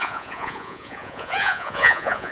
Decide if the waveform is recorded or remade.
remade